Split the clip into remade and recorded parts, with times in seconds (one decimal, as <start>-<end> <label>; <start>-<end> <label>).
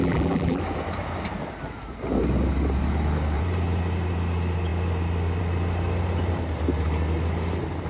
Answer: 0.0-0.6 remade; 0.6-7.9 recorded